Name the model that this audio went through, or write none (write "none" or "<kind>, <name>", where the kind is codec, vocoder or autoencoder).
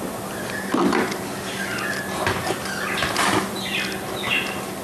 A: none